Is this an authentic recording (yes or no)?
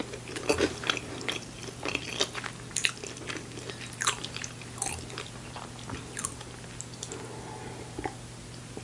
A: yes